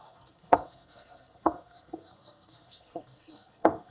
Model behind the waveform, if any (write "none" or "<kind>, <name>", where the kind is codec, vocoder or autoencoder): codec, SNAC